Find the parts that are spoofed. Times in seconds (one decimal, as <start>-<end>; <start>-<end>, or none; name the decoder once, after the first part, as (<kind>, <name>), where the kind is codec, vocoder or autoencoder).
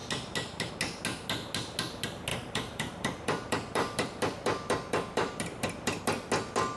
2.3-6.0 (vocoder, BigVGAN v2)